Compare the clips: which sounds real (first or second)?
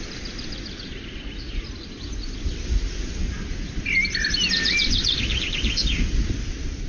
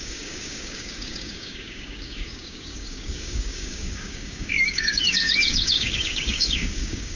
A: first